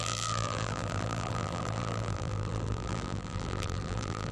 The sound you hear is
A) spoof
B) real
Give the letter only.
A